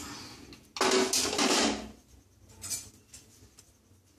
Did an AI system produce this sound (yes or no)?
no